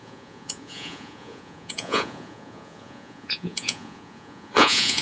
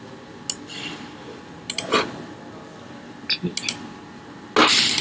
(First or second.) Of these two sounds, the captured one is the second